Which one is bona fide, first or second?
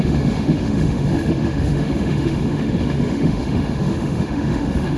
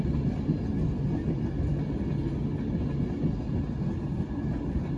second